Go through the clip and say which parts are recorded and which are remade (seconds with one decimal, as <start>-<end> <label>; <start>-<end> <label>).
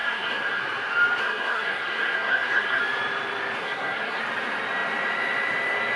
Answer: 0.0-0.6 remade; 0.6-1.2 recorded; 1.2-2.8 remade; 2.8-3.6 recorded; 3.6-4.2 remade; 4.2-6.0 recorded